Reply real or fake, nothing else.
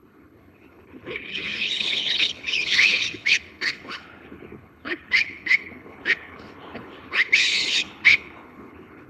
fake